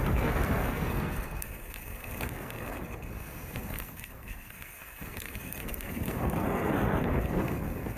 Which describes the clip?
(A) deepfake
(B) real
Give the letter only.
A